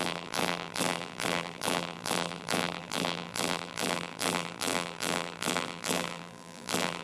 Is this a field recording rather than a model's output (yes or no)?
no